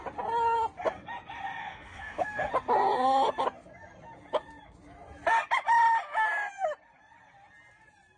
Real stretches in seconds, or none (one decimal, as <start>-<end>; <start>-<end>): 0.0-1.6; 2.5-8.2